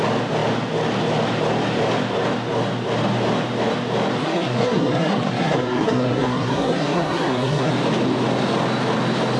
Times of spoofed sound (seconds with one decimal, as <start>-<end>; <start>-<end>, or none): 4.2-7.7

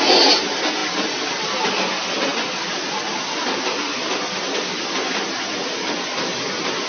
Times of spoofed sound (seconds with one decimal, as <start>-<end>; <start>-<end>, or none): none

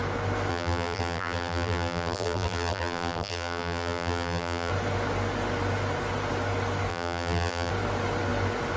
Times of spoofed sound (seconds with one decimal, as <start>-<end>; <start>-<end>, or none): 0.5-4.7; 6.9-7.7

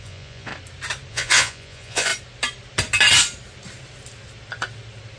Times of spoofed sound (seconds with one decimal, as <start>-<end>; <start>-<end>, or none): 0.0-0.5; 1.1-2.1

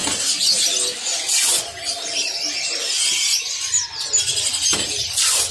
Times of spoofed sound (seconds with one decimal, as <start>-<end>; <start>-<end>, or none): none

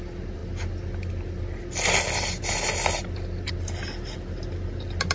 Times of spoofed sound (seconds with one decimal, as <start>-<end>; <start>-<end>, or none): none